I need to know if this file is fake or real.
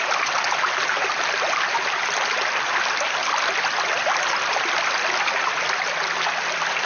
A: real